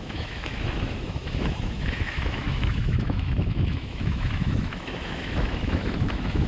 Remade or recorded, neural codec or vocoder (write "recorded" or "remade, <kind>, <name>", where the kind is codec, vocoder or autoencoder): remade, autoencoder, DAC-VAE